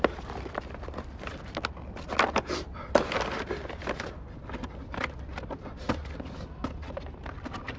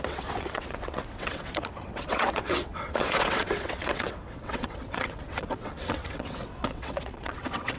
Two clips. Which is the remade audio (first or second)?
second